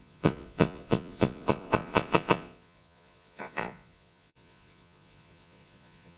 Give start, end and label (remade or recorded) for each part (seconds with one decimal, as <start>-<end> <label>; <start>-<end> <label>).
0.0-6.2 remade